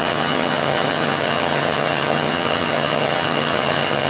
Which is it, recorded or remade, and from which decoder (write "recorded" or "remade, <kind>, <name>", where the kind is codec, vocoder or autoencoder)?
remade, vocoder, HiFi-GAN